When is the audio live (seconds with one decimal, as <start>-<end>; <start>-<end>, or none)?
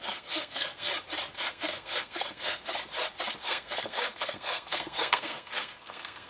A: 0.9-1.4; 2.7-3.4